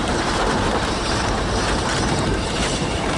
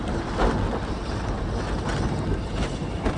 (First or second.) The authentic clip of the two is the second